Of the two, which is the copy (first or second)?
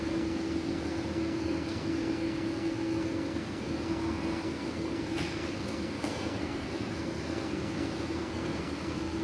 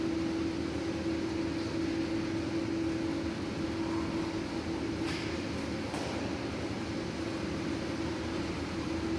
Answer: first